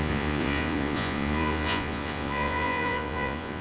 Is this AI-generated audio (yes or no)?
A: yes